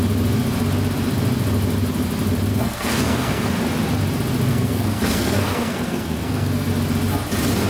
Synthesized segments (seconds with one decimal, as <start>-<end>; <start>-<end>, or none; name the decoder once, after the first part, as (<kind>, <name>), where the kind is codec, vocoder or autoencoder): 2.5-3.5 (codec, SNAC); 4.5-6.7